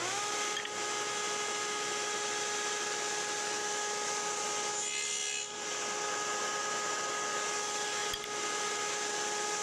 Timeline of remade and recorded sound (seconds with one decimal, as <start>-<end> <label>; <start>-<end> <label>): 0.0-9.6 recorded